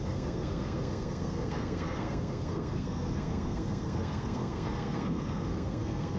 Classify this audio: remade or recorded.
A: remade